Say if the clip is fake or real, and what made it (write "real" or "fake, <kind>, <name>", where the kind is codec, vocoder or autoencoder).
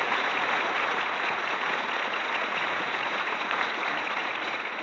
fake, vocoder, Vocos